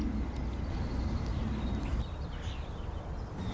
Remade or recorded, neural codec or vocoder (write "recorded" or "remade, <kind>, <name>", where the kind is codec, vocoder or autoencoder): recorded